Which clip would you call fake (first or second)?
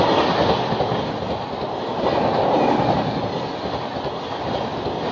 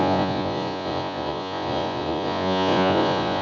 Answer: second